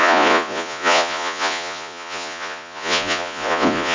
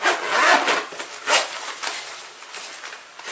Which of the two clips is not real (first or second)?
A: first